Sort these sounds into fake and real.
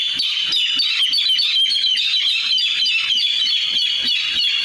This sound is real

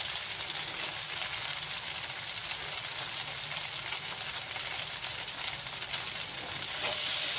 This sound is real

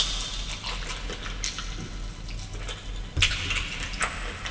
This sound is real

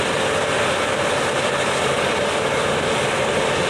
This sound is real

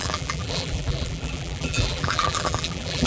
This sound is fake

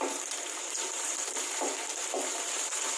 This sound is fake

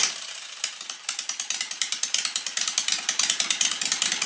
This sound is fake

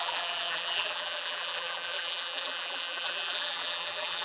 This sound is fake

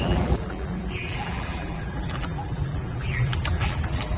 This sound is fake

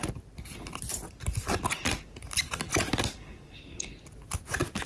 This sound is real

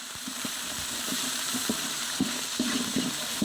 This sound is fake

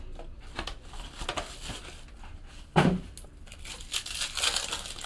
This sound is real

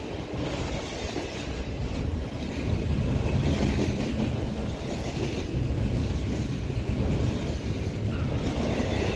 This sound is real